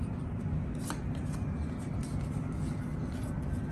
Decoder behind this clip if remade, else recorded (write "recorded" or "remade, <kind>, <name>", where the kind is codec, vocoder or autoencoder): recorded